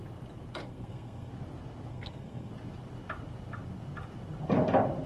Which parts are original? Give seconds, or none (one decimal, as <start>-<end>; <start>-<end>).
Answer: 0.0-0.6; 1.3-1.9; 2.5-5.1